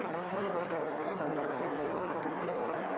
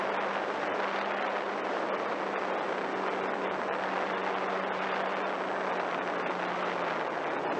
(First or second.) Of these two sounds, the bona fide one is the second